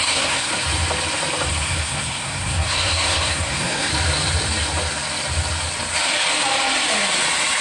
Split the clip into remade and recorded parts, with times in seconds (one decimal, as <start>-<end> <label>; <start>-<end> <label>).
0.0-0.5 remade; 0.5-1.5 recorded; 1.5-3.9 remade; 3.9-7.6 recorded